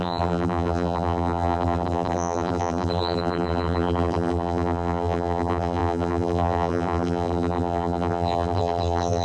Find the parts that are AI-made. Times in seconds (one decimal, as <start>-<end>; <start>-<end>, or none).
0.0-9.2